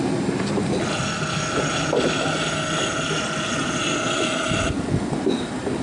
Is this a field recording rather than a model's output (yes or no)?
yes